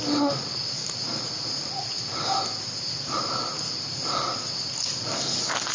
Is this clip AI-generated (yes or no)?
no